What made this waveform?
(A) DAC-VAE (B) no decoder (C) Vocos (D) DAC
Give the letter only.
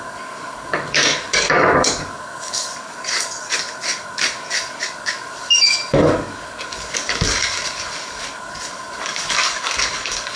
D